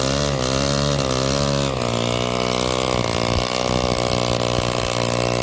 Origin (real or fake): real